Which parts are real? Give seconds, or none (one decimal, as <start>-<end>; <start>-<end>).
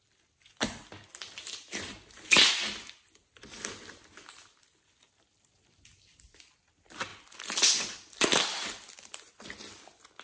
0.0-10.2